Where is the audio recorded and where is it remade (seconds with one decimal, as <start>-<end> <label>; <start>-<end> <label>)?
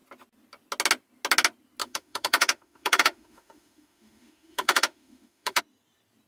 0.0-1.8 recorded; 1.8-5.6 remade; 5.6-6.3 recorded